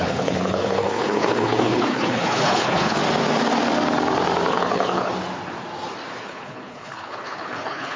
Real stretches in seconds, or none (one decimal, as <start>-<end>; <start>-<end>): 3.0-4.5; 5.1-6.2